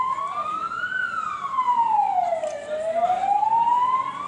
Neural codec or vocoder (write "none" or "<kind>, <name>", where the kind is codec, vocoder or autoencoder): none